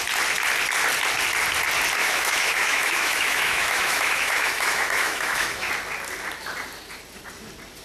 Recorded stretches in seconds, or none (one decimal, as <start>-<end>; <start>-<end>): 0.0-2.0; 5.7-7.8